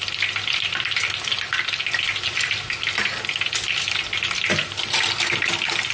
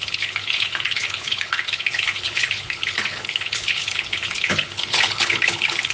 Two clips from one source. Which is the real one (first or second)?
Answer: first